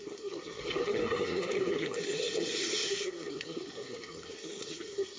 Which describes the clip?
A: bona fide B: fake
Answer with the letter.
B